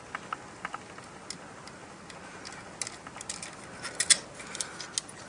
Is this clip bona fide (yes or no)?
yes